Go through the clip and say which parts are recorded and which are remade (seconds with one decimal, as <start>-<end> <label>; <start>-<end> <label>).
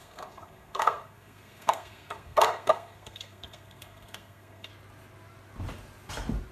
0.0-4.7 remade; 4.7-6.5 recorded